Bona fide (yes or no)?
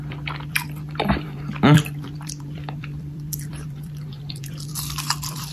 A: no